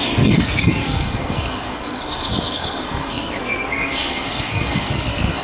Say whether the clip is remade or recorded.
remade